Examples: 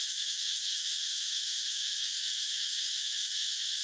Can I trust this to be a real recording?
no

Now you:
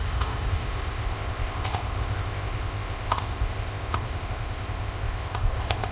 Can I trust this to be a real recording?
no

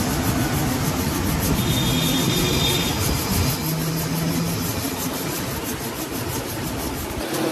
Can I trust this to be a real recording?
yes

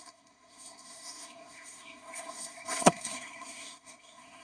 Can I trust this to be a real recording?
no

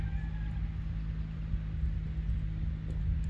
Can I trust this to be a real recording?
yes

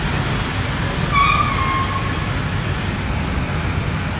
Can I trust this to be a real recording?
yes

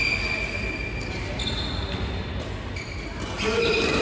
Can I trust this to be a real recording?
yes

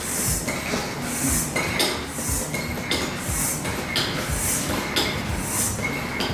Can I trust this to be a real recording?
yes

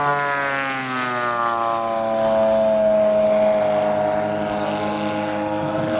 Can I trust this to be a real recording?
yes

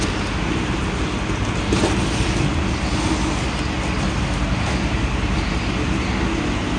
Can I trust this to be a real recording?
yes